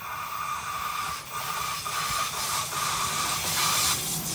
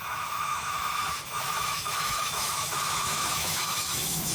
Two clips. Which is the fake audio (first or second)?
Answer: second